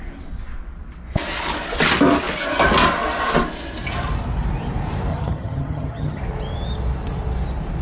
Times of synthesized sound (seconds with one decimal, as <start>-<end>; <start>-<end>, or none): 5.1-6.2